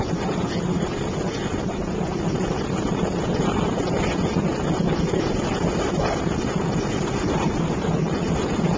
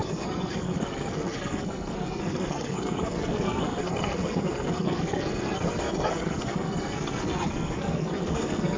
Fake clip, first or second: second